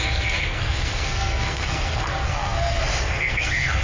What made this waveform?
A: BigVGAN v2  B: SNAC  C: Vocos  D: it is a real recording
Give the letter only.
B